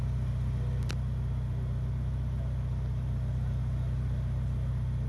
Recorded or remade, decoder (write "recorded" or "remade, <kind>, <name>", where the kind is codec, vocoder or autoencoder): recorded